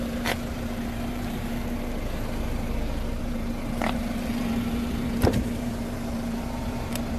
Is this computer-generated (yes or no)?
yes